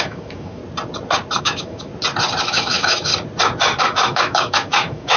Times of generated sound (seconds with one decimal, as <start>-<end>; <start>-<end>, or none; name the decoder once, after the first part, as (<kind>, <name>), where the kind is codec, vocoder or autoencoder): 0.0-0.6 (autoencoder, DAC-VAE); 1.4-1.9; 2.4-3.1; 3.8-5.2